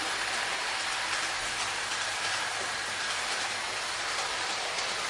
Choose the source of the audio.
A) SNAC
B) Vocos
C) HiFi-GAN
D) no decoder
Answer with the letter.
D